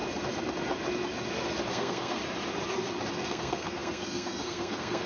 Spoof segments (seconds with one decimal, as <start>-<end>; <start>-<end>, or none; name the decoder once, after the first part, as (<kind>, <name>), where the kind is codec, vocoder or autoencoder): 1.7-2.2 (codec, SNAC); 3.1-5.1